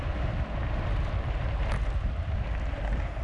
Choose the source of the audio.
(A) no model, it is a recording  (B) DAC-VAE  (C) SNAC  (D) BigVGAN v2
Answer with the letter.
A